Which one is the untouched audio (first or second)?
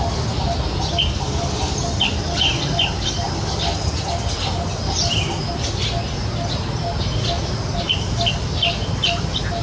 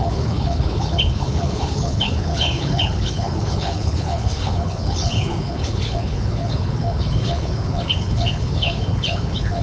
first